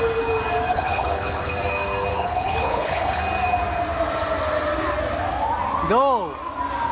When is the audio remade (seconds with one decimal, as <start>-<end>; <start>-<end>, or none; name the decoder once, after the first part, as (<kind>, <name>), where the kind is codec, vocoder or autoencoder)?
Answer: 0.7-1.5 (codec, HILCodec); 2.1-3.2